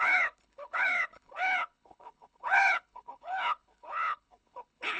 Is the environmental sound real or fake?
fake